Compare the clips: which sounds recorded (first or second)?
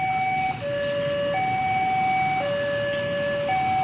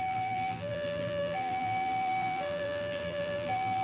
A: first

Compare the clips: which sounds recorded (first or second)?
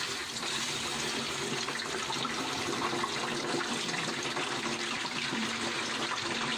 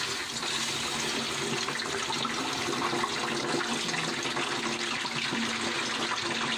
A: second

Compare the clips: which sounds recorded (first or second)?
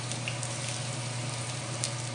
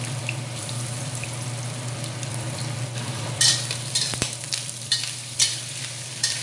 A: first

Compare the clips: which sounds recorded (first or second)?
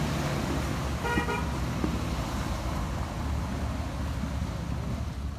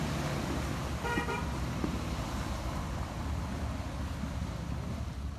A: first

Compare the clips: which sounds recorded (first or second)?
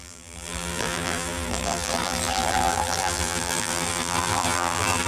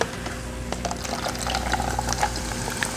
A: second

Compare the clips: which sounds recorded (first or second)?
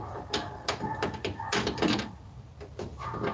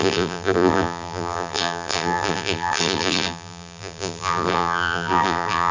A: first